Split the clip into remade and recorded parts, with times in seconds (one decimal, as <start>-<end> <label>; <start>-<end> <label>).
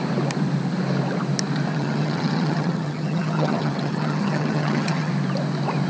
0.0-1.7 recorded; 1.7-5.1 remade; 5.1-5.9 recorded